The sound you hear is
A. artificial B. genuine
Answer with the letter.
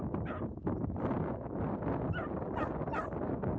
B